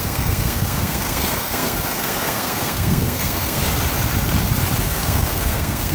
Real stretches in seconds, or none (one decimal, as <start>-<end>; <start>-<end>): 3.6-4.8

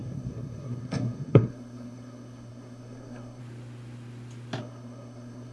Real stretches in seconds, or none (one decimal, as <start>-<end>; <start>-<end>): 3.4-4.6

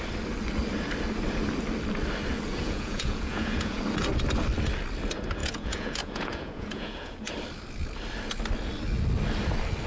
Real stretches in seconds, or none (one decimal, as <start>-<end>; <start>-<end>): 0.0-2.5; 3.8-5.4; 7.2-9.9